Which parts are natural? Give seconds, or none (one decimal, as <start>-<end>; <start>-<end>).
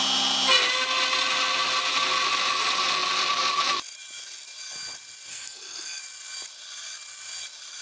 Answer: 0.0-5.3; 6.0-7.8